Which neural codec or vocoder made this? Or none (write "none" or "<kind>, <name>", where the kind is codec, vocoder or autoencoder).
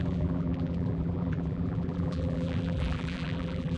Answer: vocoder, BigVGAN v2